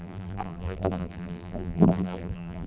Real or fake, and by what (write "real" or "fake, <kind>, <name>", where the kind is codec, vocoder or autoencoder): fake, vocoder, BigVGAN v2